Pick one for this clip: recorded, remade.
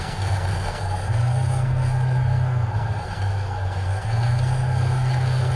remade